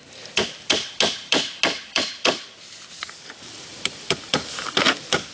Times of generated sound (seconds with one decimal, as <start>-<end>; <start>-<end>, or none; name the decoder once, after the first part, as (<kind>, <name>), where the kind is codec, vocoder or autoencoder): 1.9-5.3 (vocoder, BigVGAN v2)

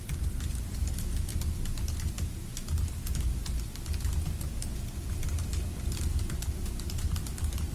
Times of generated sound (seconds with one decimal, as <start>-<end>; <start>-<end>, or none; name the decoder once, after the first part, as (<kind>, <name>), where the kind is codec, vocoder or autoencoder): 0.0-1.3 (vocoder, BigVGAN v2); 5.9-7.7

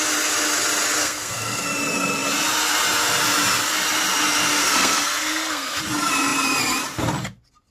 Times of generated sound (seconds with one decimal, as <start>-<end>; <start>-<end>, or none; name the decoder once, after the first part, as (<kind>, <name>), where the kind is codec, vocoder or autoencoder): 1.0-1.7 (codec, SNAC); 4.6-5.8

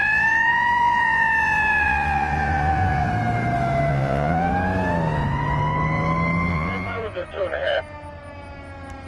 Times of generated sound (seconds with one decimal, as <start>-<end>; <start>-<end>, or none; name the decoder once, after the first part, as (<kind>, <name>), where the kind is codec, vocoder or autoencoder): 0.0-3.1 (vocoder, Vocos); 3.9-4.5; 6.5-7.8

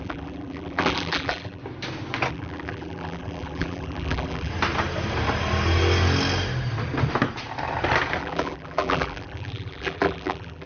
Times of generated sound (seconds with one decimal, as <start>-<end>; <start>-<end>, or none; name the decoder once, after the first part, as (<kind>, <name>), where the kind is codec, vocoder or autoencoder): 0.0-1.6 (vocoder, BigVGAN v2); 2.3-4.5; 8.2-10.7

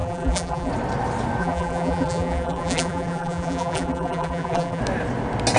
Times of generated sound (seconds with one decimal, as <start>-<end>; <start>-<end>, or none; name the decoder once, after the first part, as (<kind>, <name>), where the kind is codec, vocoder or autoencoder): 0.0-0.7 (vocoder, BigVGAN v2); 1.4-4.8

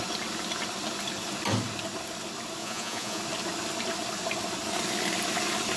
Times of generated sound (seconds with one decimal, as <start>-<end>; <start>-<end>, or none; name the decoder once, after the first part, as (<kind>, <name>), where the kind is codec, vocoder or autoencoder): 2.6-3.2 (vocoder, Vocos)

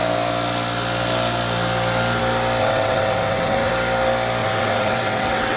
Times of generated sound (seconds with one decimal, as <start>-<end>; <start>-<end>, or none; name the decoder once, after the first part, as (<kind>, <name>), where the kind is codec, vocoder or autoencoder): 2.6-3.7 (vocoder, WaveNeXt); 4.4-5.6